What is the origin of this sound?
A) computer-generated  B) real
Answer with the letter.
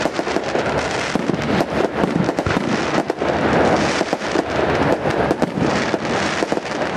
A